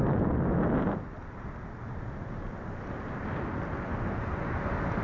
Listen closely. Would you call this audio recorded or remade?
recorded